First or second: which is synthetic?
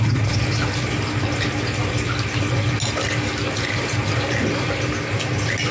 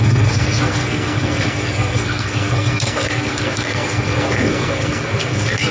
second